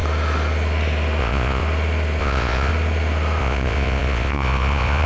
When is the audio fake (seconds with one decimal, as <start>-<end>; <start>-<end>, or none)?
1.2-1.6; 2.2-2.7; 3.4-5.1